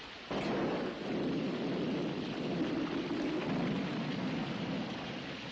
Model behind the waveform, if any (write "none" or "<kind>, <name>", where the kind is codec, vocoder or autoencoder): none